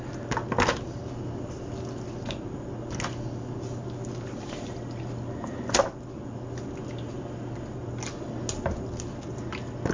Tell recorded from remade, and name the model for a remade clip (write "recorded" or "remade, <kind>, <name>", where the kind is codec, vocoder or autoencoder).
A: recorded